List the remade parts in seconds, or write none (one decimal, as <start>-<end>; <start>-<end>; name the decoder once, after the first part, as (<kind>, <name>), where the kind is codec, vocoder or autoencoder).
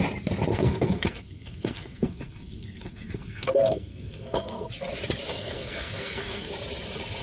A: 0.5-4.7 (codec, SNAC); 5.3-6.5